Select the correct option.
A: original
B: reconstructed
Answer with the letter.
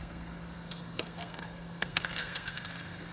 B